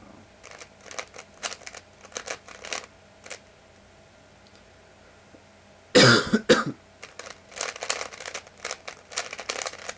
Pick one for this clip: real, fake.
real